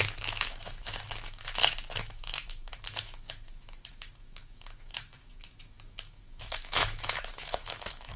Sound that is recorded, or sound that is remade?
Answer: remade